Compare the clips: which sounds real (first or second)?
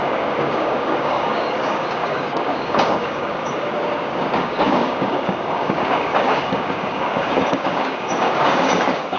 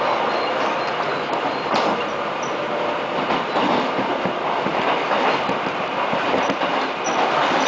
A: second